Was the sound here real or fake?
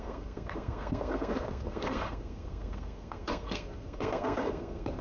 fake